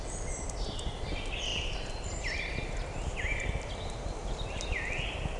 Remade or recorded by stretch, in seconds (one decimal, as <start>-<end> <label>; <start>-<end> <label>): 0.0-5.4 recorded